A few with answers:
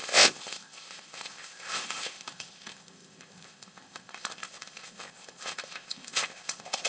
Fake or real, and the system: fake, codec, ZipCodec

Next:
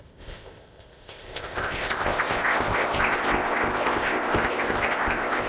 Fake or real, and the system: fake, codec, ZipCodec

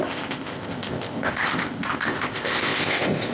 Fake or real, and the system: fake, codec, ZipCodec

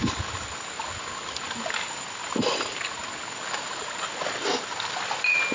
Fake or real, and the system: real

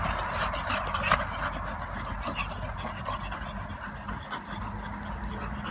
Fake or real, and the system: real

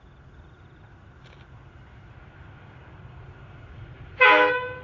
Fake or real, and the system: real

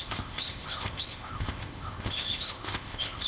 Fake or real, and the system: fake, codec, ZipCodec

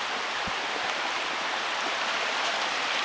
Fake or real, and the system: real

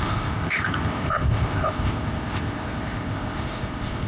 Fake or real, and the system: fake, codec, ZipCodec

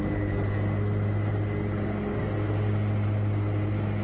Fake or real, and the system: real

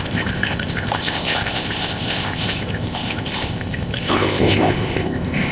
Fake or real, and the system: fake, codec, ZipCodec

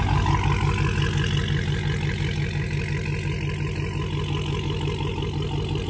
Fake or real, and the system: real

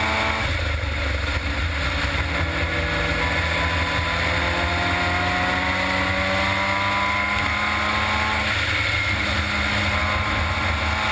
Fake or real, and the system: real